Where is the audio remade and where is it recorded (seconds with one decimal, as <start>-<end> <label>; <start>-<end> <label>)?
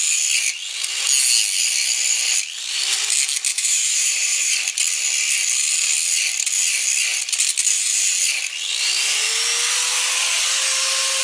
0.0-3.5 recorded; 3.5-4.6 remade; 4.6-11.2 recorded